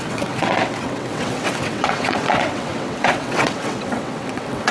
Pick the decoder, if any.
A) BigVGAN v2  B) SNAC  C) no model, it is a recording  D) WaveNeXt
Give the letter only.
D